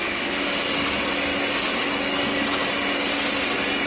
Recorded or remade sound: recorded